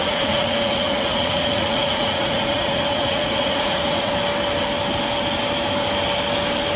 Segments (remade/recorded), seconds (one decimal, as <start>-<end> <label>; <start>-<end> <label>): 0.0-4.1 remade; 4.1-6.8 recorded